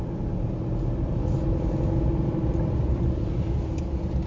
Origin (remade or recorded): recorded